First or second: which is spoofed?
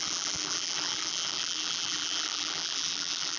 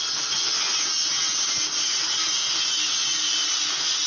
first